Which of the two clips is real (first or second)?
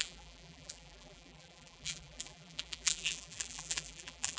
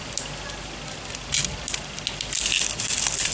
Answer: second